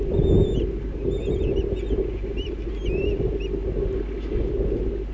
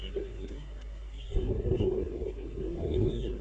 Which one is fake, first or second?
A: second